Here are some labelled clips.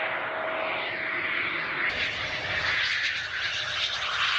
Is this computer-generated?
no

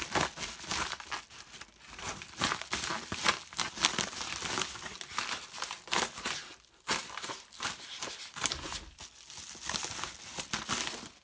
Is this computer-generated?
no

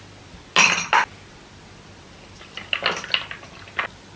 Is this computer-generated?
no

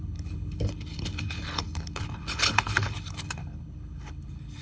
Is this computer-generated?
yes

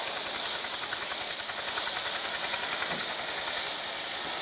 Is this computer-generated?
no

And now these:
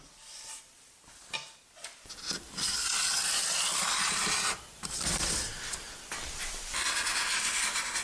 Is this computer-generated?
no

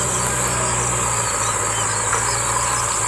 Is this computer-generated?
no